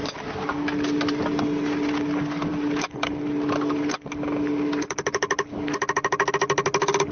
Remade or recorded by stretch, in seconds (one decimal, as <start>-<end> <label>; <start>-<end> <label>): 0.0-7.1 recorded